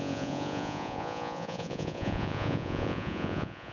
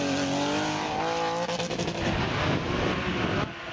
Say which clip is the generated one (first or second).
first